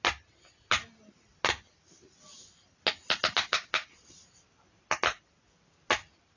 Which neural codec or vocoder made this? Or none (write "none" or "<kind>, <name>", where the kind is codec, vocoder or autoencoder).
none